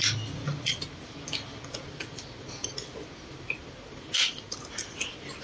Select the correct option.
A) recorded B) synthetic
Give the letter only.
A